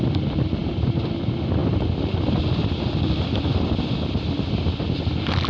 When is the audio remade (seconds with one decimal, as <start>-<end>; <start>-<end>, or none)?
none